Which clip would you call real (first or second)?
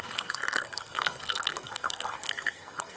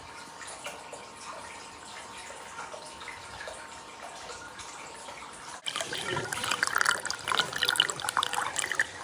second